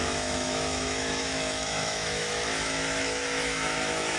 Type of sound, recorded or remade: remade